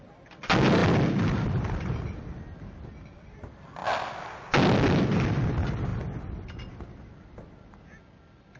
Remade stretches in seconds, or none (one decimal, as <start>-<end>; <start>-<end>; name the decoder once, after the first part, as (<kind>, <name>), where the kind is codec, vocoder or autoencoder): none